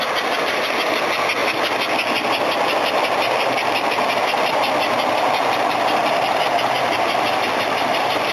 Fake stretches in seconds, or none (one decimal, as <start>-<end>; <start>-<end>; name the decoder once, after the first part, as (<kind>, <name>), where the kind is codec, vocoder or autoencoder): none